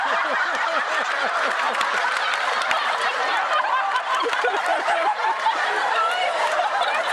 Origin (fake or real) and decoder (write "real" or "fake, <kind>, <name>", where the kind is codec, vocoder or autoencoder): fake, vocoder, BigVGAN v2